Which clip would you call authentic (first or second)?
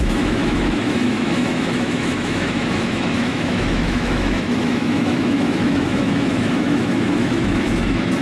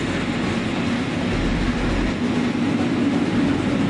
second